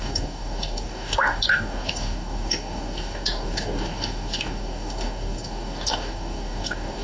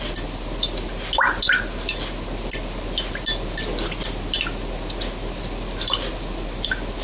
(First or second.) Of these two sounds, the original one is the second